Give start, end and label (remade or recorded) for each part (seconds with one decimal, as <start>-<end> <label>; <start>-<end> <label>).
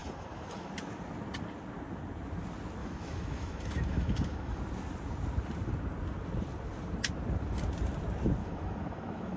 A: 0.0-0.7 remade; 0.7-2.8 recorded; 2.8-4.6 remade; 4.6-8.4 recorded; 8.4-9.4 remade